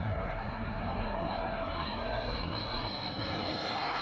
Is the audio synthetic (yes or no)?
yes